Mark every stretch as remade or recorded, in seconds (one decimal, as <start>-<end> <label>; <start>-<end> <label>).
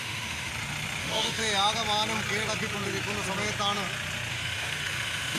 0.0-0.5 remade; 0.5-1.0 recorded; 1.0-1.4 remade; 1.4-4.3 recorded; 4.3-5.4 remade